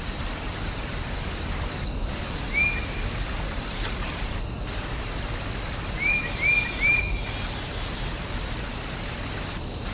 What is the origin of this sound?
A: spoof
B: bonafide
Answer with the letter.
B